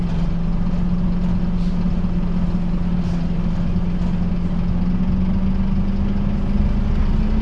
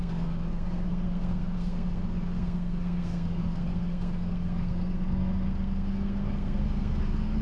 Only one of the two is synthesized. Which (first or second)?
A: second